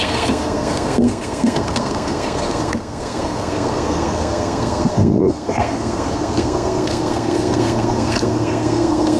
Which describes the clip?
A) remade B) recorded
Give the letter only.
A